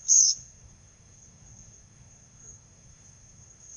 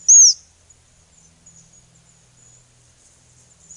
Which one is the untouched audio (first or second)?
second